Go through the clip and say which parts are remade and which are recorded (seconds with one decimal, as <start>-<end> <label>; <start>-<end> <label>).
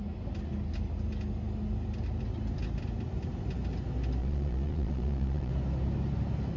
0.0-4.2 recorded; 4.2-5.5 remade; 5.5-6.6 recorded